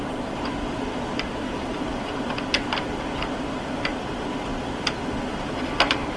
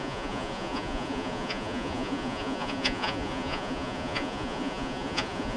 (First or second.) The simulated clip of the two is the second